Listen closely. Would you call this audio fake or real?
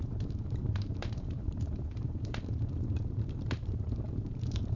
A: fake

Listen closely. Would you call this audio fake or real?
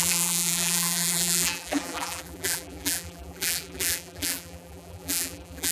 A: fake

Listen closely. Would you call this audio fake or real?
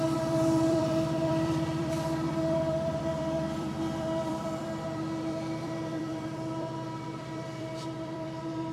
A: fake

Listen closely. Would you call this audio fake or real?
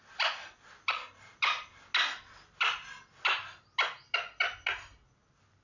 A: real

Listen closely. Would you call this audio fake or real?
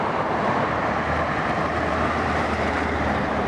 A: fake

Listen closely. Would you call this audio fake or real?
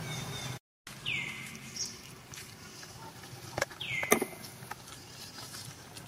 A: real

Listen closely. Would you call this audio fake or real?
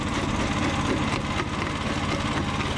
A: real